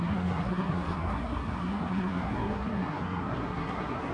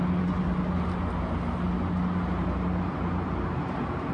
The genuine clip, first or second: second